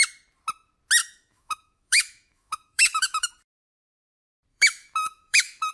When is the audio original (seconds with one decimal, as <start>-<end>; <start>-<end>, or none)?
0.0-1.0; 3.3-4.5